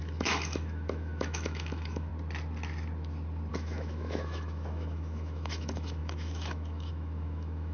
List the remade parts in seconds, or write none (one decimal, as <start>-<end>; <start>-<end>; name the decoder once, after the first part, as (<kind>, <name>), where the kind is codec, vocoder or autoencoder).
0.0-2.1 (autoencoder, DAC-VAE); 3.5-7.7